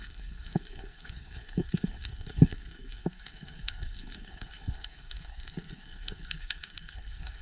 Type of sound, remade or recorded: remade